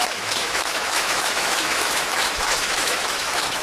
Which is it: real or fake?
fake